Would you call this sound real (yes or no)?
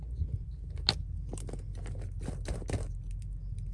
yes